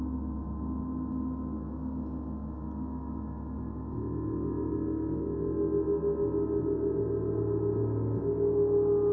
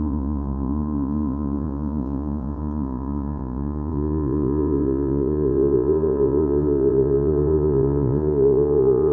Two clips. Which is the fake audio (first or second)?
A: second